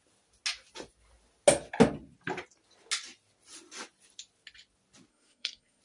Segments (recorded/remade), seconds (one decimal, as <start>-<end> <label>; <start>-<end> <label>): 0.0-5.1 recorded; 5.1-5.8 remade